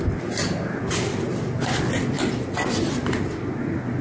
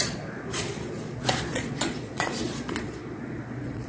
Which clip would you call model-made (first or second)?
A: second